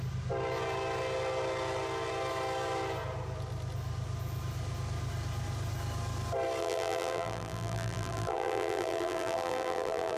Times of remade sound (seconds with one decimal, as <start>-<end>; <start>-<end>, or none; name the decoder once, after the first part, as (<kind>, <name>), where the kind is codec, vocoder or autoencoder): 6.6-10.2 (vocoder, BigVGAN v2)